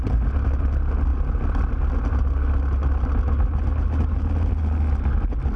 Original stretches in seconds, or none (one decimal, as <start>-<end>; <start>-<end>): 0.0-5.6